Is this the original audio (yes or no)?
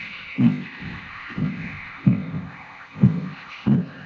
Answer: no